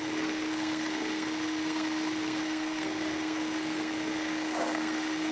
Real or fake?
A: fake